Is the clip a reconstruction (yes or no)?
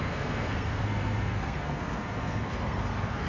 yes